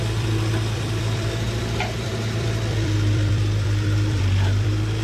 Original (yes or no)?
no